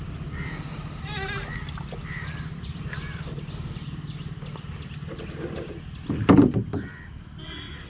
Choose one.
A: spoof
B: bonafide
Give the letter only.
B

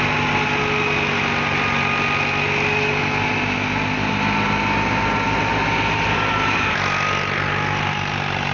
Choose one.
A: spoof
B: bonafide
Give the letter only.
B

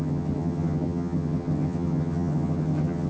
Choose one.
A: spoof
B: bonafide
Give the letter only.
A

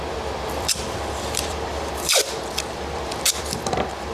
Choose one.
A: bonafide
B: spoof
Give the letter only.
B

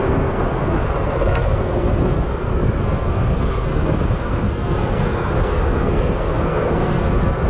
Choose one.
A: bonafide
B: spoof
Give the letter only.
B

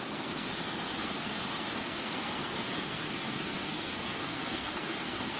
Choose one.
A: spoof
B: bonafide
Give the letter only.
A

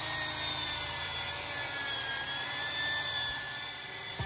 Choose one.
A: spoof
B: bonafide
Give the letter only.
A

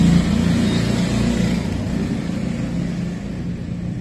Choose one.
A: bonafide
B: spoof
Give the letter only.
A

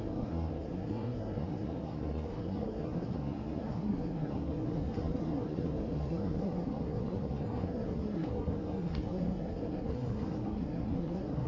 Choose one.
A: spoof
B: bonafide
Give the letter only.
A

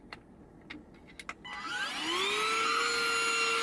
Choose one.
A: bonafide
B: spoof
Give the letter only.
A